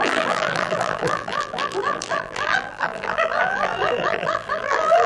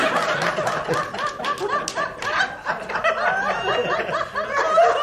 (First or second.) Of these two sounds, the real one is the second